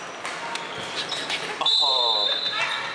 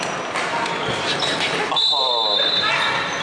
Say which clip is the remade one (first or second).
second